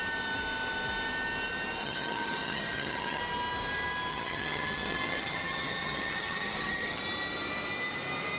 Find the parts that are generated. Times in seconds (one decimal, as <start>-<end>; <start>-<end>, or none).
1.8-3.2; 4.1-7.0